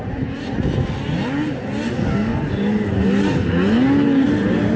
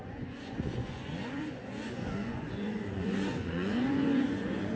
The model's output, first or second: second